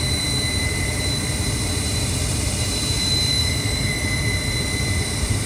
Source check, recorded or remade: remade